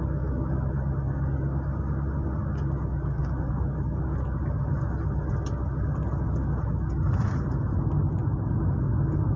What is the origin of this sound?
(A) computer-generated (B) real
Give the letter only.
B